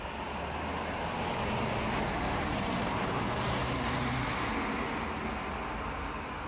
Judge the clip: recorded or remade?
recorded